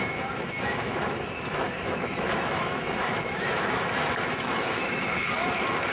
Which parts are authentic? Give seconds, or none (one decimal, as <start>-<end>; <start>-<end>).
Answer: none